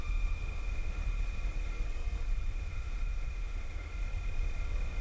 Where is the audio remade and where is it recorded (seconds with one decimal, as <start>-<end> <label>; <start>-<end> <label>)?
0.0-1.0 remade; 1.0-2.5 recorded; 2.5-3.9 remade; 3.9-5.0 recorded